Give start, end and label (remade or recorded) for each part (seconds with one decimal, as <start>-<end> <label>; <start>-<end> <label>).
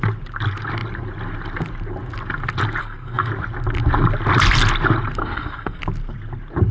0.0-2.8 recorded; 2.8-3.3 remade; 3.3-5.2 recorded; 5.2-5.8 remade; 5.8-6.7 recorded